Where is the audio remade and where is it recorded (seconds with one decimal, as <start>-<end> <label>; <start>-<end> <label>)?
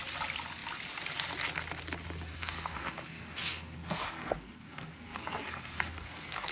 0.0-2.3 recorded; 2.3-6.5 remade